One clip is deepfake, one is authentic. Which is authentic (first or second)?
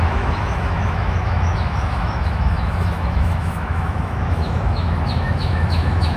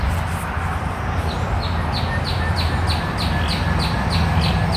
second